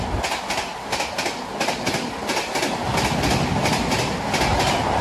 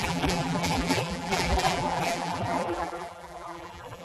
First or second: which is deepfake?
second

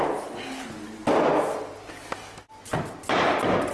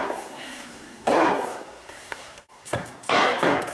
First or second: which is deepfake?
second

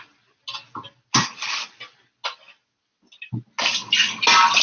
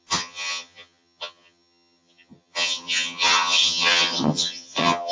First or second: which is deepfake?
second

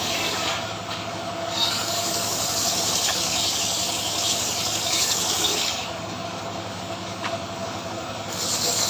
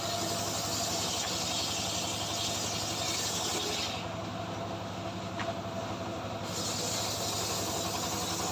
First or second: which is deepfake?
first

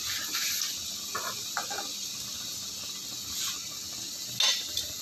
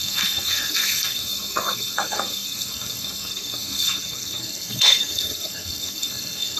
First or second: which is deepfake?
second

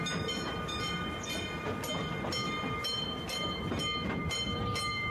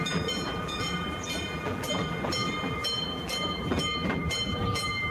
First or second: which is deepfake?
second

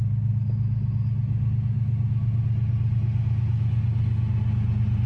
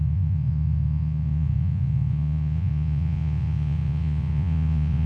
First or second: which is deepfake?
second